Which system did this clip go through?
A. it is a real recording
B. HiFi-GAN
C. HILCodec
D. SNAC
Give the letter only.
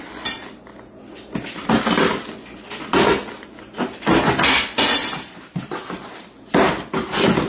A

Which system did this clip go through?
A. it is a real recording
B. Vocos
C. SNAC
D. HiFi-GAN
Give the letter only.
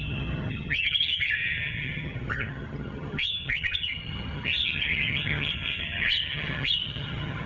D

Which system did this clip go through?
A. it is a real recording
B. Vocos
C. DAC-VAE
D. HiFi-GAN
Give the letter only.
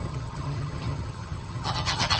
D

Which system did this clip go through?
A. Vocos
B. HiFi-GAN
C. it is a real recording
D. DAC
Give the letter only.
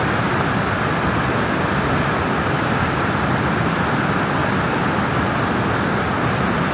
C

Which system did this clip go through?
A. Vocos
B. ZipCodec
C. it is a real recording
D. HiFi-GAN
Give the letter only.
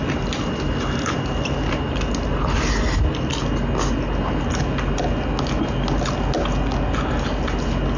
C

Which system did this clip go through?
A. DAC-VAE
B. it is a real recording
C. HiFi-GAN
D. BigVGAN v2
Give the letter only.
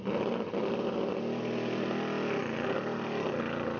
B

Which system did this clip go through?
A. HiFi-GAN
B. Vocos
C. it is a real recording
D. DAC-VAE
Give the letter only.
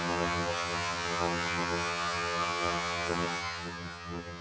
A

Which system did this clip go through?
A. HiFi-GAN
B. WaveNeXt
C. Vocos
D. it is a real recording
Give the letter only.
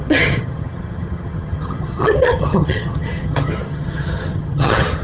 A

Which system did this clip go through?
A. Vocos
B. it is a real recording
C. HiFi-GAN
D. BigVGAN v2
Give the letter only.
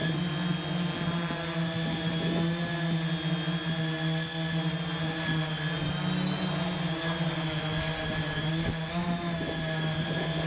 B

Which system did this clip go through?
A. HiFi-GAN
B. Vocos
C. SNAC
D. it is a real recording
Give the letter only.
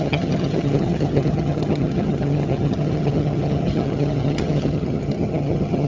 A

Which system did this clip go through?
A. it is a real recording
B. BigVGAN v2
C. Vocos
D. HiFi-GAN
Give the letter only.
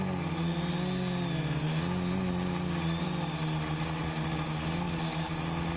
A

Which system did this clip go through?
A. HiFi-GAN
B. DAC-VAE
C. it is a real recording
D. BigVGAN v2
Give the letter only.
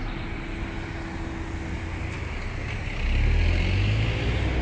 C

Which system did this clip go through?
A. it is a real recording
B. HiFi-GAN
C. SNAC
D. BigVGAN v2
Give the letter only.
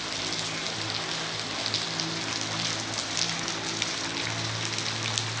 A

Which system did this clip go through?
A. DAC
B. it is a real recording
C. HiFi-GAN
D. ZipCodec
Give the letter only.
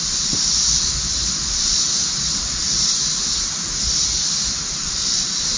B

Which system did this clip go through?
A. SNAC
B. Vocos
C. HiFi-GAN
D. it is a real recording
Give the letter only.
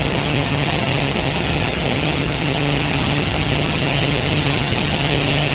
C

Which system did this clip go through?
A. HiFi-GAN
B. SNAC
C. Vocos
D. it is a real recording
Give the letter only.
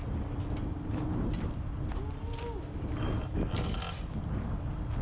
D